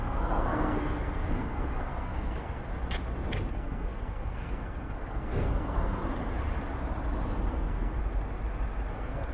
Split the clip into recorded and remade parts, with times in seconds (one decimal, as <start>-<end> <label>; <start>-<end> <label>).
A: 0.0-2.7 remade; 2.7-3.5 recorded; 3.5-6.0 remade; 6.0-7.5 recorded; 7.5-8.0 remade; 8.0-8.9 recorded; 8.9-9.3 remade